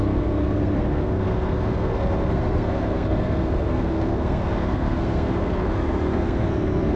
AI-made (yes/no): yes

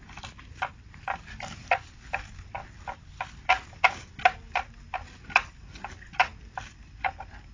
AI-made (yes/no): no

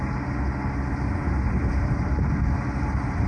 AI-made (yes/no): no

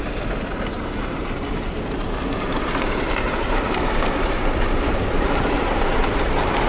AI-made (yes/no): yes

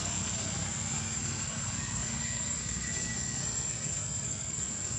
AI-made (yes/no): yes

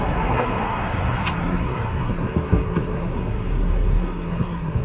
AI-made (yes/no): yes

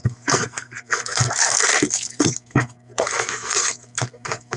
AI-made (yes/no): yes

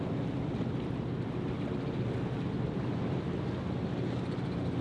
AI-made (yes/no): no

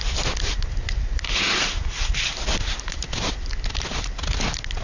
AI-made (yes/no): no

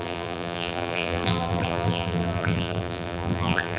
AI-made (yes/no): yes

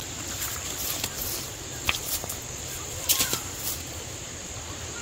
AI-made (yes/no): yes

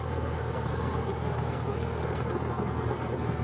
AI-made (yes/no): yes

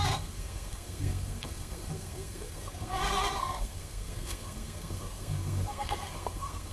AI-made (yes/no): yes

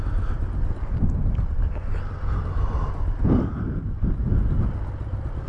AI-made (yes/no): no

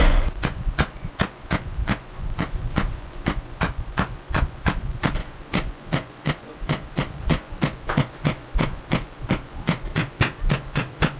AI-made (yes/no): yes